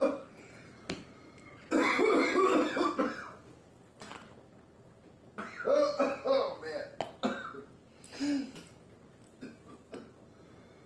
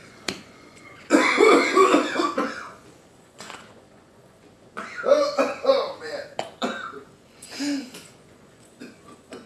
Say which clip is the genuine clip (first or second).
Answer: first